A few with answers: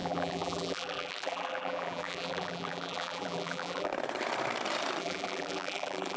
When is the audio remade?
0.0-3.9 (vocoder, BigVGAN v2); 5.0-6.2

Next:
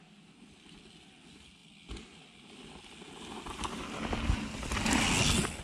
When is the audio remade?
none

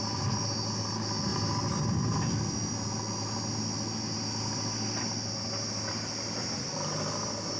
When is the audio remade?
none